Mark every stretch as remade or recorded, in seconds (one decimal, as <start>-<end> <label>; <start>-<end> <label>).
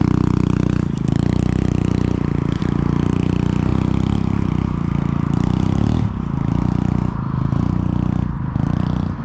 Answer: 0.0-9.2 recorded